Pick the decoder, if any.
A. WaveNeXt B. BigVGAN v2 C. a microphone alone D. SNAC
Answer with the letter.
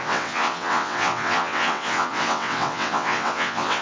A